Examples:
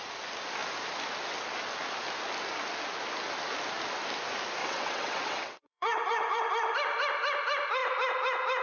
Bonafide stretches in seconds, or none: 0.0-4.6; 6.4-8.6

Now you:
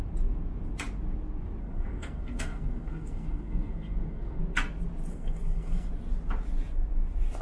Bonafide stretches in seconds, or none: 0.0-1.6; 4.4-5.1; 5.9-7.4

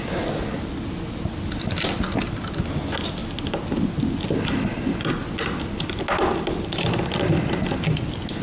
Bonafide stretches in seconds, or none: 0.0-8.4

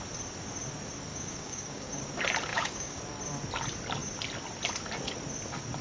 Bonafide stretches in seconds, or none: 0.0-1.1; 2.0-2.5; 3.0-5.8

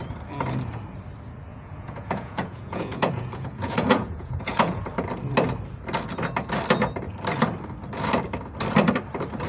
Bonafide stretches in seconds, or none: 0.0-1.5; 4.8-9.5

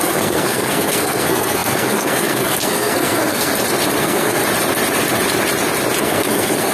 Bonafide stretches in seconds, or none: 3.5-4.0; 4.4-6.0